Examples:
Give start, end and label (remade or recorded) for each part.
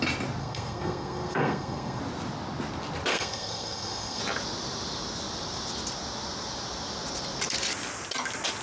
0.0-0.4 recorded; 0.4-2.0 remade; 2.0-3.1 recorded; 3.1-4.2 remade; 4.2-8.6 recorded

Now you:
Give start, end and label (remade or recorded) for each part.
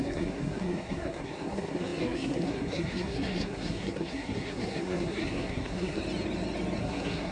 0.0-6.0 remade; 6.0-6.8 recorded; 6.8-7.3 remade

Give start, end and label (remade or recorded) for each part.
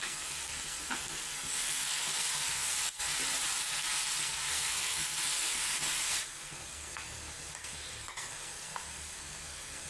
0.0-3.1 remade; 3.1-3.6 recorded; 3.6-9.9 remade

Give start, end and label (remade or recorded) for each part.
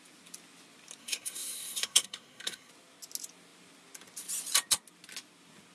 0.0-1.0 recorded; 1.0-2.7 remade; 2.7-5.7 recorded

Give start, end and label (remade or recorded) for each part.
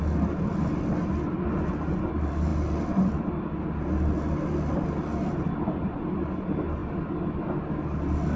0.0-8.4 recorded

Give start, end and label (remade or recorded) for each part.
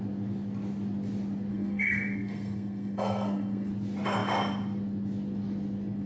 0.0-1.5 recorded; 1.5-3.7 remade; 3.7-6.1 recorded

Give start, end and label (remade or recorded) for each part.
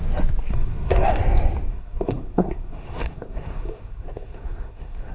0.0-0.5 recorded; 0.5-1.1 remade; 1.1-1.7 recorded; 1.7-5.1 remade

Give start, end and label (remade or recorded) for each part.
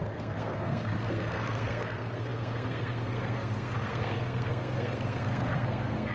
0.0-6.1 remade